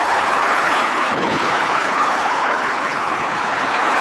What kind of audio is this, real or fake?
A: fake